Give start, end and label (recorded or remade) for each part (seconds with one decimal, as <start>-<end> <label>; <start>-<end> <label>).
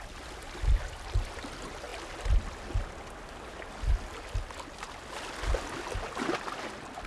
0.0-7.1 recorded